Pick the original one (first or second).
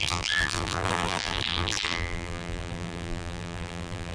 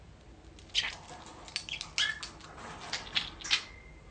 second